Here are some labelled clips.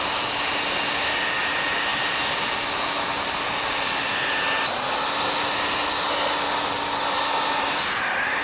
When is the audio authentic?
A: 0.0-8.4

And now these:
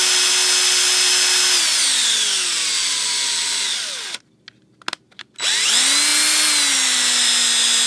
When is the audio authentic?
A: 0.0-7.9

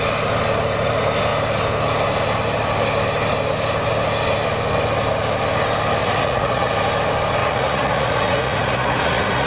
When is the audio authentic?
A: 0.0-6.0; 6.7-7.4

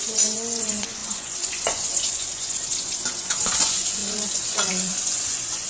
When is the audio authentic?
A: none

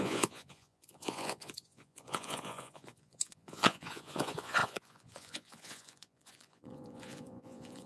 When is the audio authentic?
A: none

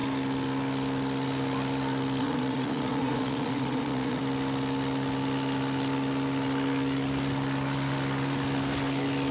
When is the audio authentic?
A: 0.0-2.2; 4.2-9.3

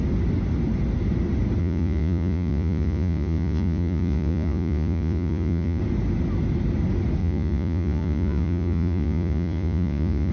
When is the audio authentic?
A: 0.0-1.6; 5.8-7.2